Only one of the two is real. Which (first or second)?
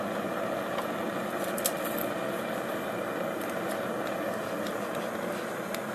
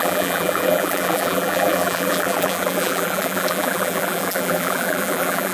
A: first